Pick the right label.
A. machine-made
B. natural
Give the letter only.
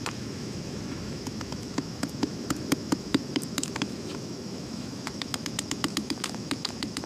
A